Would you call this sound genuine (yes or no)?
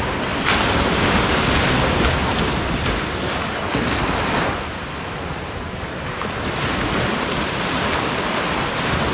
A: yes